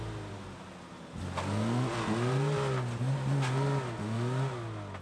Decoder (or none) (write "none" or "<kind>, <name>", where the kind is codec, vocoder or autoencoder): none